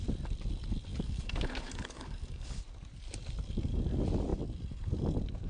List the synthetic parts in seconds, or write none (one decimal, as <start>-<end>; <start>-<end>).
0.9-2.6